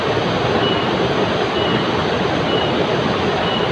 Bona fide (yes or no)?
yes